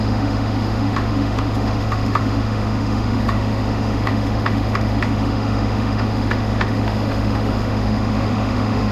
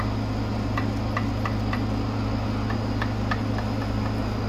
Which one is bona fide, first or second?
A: second